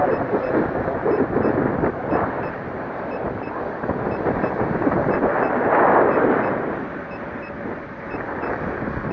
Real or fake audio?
fake